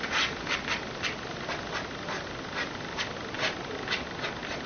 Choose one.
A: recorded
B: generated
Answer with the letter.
A